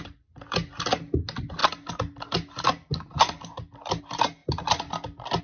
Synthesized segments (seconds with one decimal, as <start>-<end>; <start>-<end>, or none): none